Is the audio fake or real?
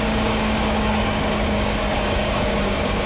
fake